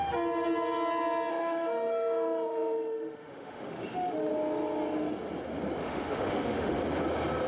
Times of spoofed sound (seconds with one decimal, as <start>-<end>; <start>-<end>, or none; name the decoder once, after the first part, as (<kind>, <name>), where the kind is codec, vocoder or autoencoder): 1.3-4.3 (autoencoder, DAC-VAE); 5.8-6.8